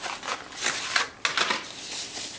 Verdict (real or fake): real